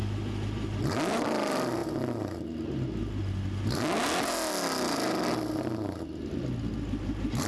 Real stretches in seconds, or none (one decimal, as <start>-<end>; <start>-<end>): 0.0-7.5